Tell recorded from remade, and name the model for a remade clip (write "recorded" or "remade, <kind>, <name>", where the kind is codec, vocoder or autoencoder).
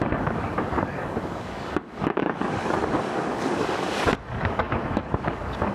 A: remade, codec, DAC